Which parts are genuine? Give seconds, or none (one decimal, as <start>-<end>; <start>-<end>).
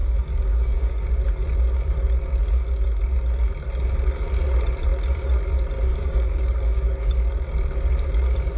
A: 0.9-5.9; 6.9-8.6